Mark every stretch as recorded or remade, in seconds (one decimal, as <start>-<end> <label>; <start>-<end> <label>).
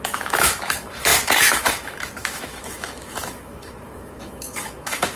0.0-5.2 remade